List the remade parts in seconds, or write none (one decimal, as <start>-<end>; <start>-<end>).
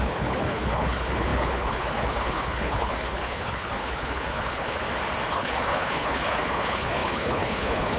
0.0-4.8; 5.3-8.0